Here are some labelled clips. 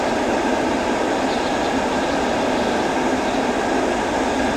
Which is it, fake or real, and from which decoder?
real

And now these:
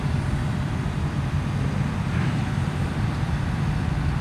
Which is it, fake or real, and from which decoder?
real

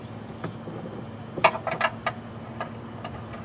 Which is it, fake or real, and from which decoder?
real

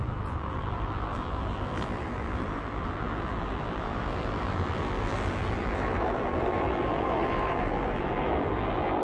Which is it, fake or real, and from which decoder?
fake, vocoder, BigVGAN v2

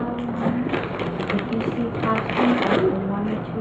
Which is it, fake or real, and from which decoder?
real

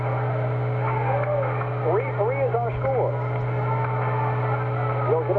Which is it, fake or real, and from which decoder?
real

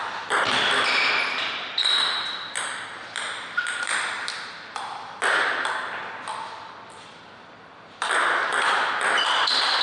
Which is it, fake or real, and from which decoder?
real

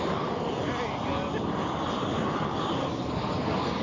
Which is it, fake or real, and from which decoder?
real